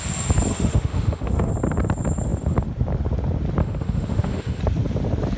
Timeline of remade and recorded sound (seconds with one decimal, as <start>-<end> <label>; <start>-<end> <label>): 0.0-0.5 recorded; 0.5-1.5 remade; 1.5-3.6 recorded; 3.6-4.6 remade; 4.6-5.4 recorded